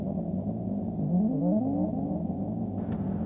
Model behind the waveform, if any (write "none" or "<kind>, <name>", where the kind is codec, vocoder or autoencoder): none